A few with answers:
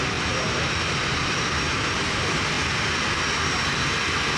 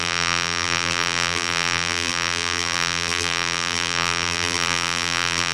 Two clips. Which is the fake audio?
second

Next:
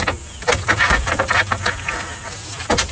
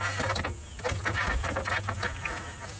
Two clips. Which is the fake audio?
first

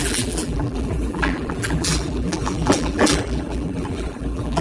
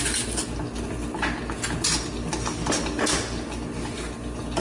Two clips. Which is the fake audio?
first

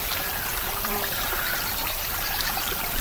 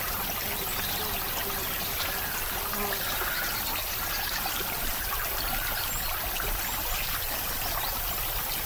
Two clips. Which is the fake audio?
first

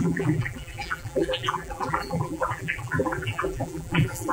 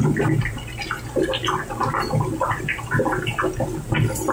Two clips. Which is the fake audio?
first